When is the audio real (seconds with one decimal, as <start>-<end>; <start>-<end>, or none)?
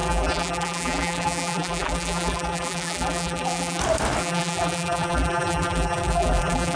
3.8-4.2